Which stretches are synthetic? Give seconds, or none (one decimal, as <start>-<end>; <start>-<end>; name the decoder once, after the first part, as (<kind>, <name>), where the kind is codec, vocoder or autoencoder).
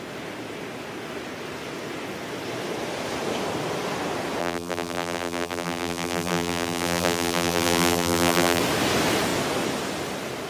4.4-8.6 (vocoder, BigVGAN v2)